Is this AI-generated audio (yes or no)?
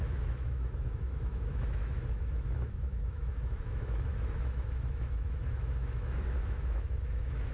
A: yes